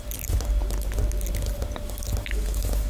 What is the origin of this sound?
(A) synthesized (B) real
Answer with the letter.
B